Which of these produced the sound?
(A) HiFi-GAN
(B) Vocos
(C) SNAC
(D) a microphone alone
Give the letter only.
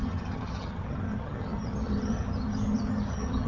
A